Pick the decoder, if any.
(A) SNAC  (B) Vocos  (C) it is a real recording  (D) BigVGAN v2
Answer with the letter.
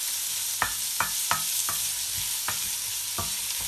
C